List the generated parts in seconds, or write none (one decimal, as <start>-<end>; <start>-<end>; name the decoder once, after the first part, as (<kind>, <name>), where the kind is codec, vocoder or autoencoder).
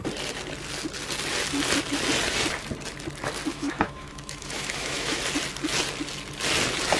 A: 3.5-5.2 (autoencoder, DAC-VAE)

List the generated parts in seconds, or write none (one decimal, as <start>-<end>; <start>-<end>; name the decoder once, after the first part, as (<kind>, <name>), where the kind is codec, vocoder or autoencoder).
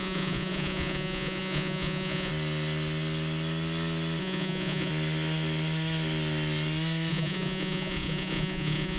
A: 0.0-2.3 (vocoder, Vocos); 4.2-4.9; 7.1-9.0